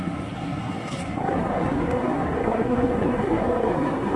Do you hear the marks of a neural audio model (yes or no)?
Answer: yes